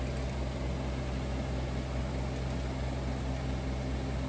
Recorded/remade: recorded